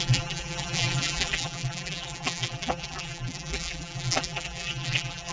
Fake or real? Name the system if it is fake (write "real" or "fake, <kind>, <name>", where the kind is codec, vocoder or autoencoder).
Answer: fake, vocoder, BigVGAN v2